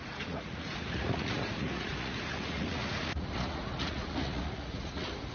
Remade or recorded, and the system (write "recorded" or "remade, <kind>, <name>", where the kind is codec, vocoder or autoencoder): remade, vocoder, Vocos